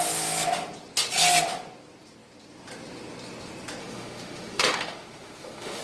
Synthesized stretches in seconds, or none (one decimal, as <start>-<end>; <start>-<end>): 3.8-5.8